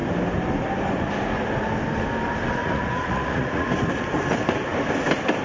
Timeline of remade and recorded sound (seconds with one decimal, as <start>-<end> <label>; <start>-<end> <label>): 0.0-2.6 recorded; 2.6-3.7 remade; 3.7-5.4 recorded